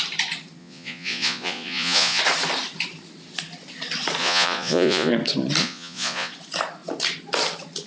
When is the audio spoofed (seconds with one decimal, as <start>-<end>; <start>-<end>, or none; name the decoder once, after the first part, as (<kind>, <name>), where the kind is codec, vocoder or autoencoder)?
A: 0.6-2.2 (vocoder, Vocos); 4.2-5.1; 5.6-6.3